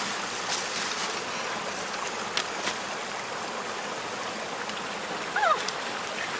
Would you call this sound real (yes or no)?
yes